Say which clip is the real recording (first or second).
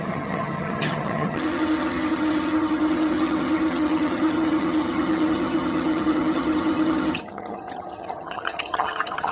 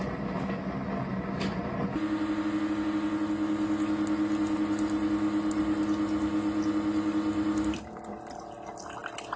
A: second